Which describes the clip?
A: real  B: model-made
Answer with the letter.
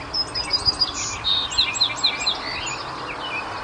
A